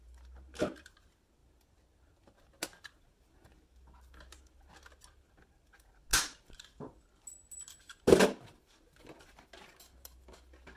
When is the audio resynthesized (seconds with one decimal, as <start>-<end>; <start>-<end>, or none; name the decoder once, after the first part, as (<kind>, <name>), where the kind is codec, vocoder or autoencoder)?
none